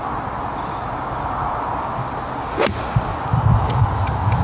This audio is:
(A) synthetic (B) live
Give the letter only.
B